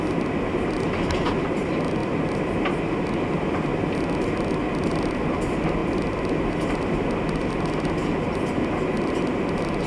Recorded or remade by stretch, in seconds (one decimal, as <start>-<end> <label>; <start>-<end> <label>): 0.0-9.9 recorded